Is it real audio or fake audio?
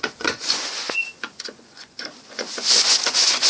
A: fake